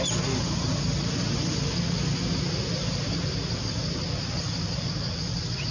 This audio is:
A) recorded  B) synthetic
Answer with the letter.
A